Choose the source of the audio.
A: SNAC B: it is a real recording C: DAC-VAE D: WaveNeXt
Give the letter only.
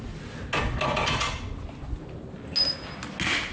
B